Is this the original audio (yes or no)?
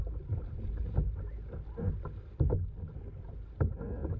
yes